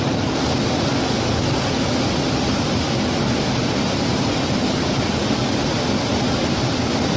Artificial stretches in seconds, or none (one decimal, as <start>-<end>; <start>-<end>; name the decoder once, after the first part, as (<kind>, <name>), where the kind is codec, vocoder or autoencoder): none